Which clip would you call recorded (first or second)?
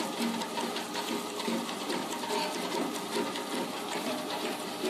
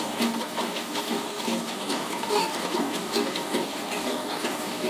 first